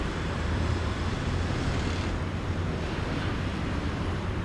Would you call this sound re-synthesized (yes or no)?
yes